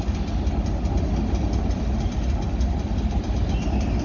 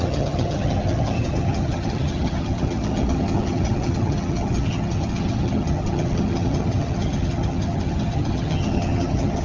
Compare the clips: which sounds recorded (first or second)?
first